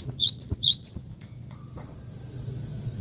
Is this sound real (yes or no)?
no